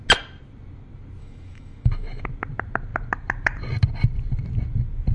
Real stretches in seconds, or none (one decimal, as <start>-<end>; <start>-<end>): 0.0-1.2; 2.2-5.1